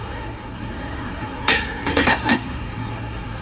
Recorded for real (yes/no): no